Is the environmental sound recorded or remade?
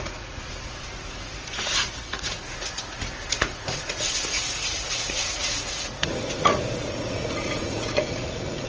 remade